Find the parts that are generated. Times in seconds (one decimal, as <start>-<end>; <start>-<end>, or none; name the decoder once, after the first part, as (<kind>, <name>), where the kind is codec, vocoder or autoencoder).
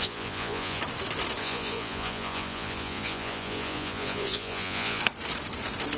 0.0-0.8 (vocoder, Vocos); 1.4-5.0